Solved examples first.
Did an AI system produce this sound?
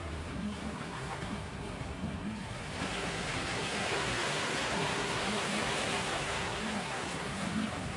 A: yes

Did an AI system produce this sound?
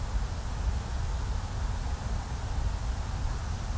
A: no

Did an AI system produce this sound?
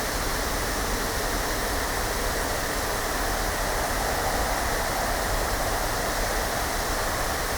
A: no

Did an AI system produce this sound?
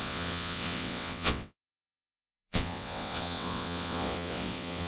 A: yes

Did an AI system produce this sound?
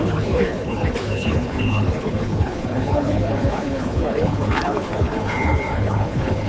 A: yes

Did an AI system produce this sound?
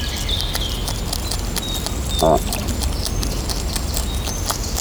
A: no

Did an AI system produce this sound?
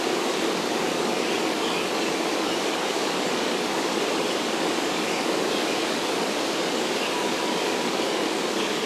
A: yes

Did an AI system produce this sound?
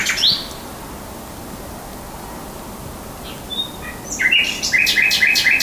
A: no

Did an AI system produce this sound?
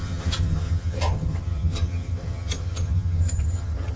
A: yes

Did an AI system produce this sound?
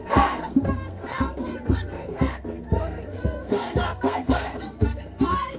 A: yes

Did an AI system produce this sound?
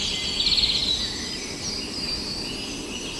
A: no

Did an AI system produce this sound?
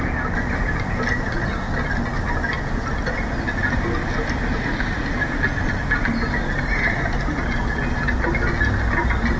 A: no